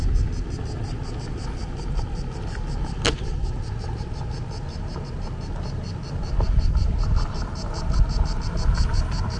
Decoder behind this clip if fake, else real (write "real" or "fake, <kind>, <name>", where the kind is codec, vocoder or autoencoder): real